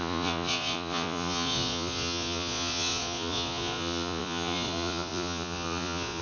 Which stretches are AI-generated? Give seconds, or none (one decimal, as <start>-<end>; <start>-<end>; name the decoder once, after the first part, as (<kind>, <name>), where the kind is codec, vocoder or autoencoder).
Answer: 0.0-6.2 (vocoder, Vocos)